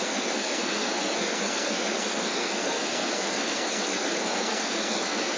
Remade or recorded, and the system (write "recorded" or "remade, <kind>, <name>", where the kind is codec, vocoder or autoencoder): remade, codec, SNAC